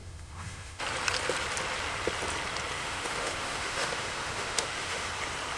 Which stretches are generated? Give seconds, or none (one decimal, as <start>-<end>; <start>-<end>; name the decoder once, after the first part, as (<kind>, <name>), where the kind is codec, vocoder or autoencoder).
0.0-0.8 (autoencoder, DAC-VAE); 2.8-5.1